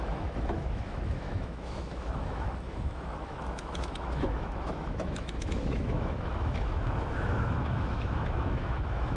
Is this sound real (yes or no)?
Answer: no